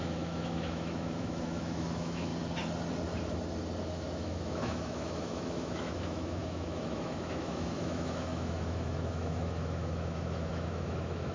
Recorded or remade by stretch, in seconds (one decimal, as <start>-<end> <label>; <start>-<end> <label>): 0.0-2.3 remade; 2.3-3.8 recorded; 3.8-11.3 remade